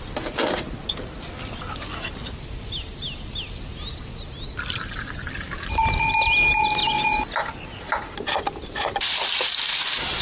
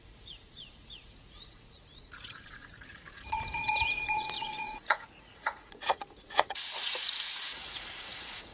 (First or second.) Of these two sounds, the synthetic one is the second